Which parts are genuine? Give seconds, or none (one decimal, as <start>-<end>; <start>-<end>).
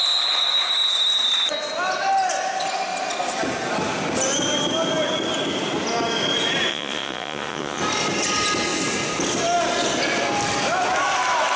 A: 0.0-6.7; 7.8-11.6